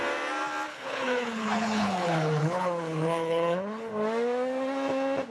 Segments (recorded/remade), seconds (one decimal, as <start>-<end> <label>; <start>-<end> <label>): 0.0-0.7 recorded; 0.7-3.9 remade; 3.9-5.3 recorded